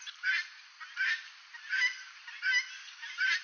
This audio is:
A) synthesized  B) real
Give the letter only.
B